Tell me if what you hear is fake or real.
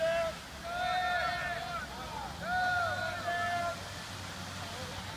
real